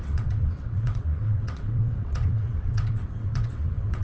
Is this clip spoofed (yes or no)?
yes